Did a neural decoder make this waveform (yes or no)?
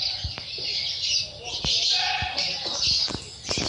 no